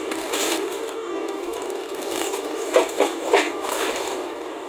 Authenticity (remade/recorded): remade